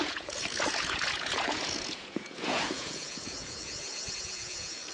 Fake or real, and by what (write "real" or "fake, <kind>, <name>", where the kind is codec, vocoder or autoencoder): fake, vocoder, Vocos